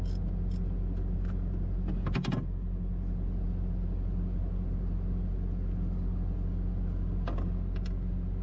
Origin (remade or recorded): recorded